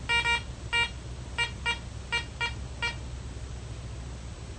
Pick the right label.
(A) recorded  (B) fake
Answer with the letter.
A